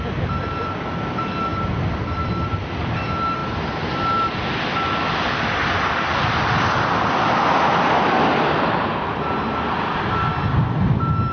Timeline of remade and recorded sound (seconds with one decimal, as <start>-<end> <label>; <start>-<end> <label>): 0.0-11.3 recorded